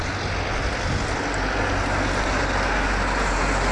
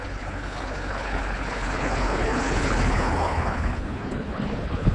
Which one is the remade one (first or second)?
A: second